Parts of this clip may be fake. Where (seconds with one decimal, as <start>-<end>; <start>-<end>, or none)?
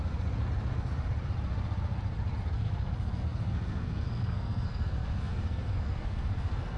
2.5-6.8